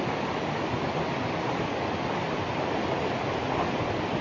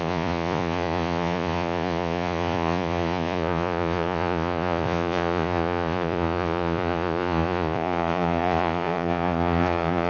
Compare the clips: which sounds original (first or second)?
first